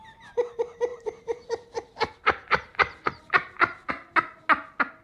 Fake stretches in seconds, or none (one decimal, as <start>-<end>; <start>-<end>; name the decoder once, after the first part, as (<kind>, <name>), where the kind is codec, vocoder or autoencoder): 0.9-3.9 (vocoder, BigVGAN v2)